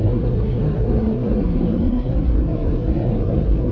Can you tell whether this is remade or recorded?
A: remade